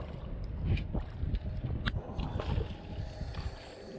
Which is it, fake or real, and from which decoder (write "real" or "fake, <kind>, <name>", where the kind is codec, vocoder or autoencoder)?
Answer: real